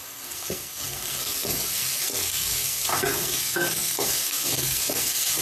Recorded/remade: remade